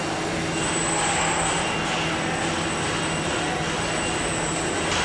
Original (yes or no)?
yes